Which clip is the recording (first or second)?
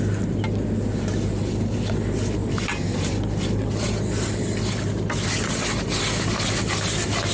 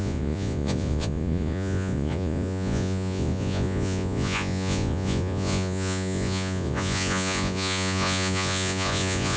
first